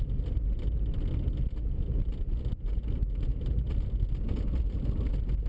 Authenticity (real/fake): real